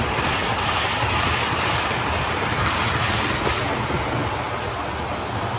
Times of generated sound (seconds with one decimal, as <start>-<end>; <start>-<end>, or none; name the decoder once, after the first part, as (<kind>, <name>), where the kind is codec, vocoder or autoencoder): none